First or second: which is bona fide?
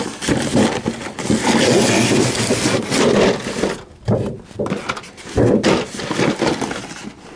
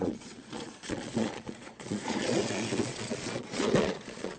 first